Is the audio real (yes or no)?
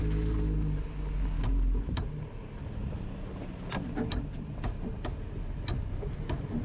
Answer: yes